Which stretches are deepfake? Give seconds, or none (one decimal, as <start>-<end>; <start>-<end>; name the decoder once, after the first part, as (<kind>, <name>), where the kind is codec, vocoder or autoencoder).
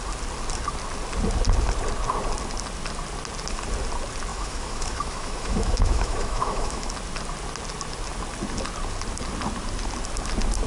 4.3-6.9 (autoencoder, DAC-VAE)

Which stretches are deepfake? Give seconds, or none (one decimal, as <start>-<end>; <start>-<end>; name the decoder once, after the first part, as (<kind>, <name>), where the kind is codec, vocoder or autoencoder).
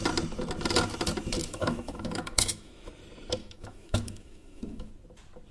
1.4-2.9 (autoencoder, DAC-VAE); 3.4-4.9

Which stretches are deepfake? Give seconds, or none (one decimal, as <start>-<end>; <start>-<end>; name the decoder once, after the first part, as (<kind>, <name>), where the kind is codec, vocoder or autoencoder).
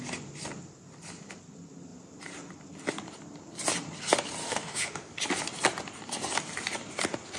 4.4-5.1 (autoencoder, DAC-VAE)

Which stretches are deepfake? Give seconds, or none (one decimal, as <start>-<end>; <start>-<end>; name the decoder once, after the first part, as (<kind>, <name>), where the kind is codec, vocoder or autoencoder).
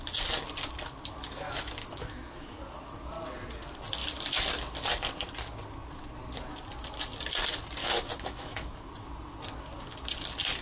1.8-2.6 (autoencoder, DAC-VAE); 7.8-8.9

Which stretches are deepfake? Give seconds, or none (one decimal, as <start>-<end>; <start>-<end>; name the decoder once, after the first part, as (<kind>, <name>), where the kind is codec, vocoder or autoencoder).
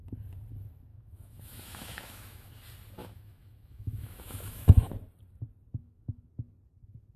0.9-2.6 (autoencoder, DAC-VAE); 3.0-4.9; 5.8-6.3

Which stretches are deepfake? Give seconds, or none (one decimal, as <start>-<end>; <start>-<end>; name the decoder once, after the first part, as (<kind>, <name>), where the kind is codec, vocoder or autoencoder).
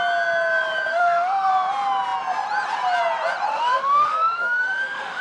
0.9-1.5 (autoencoder, DAC-VAE); 3.5-5.2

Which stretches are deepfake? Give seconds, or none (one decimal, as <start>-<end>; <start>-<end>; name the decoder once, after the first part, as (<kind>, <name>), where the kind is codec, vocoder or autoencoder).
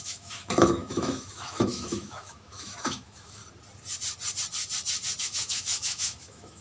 0.0-3.4 (autoencoder, DAC-VAE); 5.2-6.6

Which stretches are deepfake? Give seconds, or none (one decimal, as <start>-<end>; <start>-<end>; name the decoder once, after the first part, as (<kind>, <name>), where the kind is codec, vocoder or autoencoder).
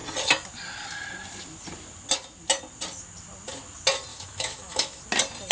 4.1-5.0 (autoencoder, DAC-VAE)